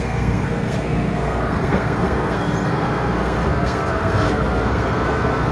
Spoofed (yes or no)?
yes